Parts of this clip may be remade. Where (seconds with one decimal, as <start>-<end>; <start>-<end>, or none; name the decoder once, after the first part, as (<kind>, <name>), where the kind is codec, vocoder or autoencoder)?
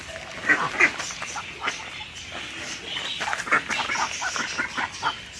none